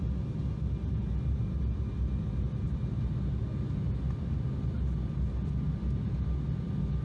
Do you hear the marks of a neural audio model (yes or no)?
no